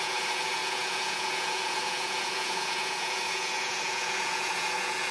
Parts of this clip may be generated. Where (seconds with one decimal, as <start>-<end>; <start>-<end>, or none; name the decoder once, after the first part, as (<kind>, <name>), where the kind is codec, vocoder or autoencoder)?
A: 0.0-5.1 (vocoder, Vocos)